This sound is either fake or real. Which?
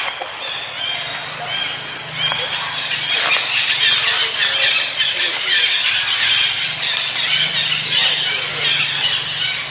real